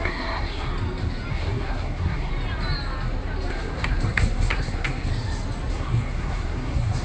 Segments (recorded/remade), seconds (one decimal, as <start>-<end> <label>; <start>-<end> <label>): 0.0-0.7 remade; 0.7-1.3 recorded; 1.3-2.3 remade; 2.3-3.5 recorded; 3.5-5.1 remade; 5.1-5.7 recorded; 5.7-7.0 remade